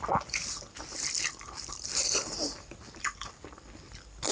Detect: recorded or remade remade